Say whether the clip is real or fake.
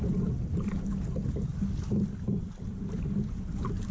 real